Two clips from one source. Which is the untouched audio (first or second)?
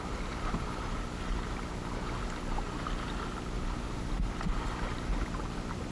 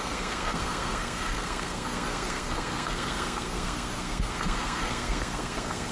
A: first